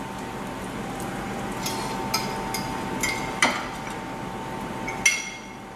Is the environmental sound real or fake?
real